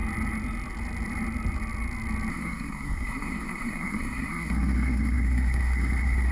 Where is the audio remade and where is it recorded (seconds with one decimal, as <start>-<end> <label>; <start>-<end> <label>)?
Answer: 0.0-2.3 recorded; 2.3-6.3 remade